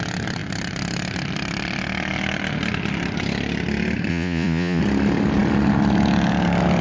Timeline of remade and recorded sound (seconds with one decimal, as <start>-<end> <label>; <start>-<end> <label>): 0.0-4.1 recorded; 4.1-4.8 remade; 4.8-6.8 recorded